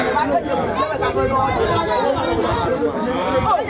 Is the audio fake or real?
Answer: real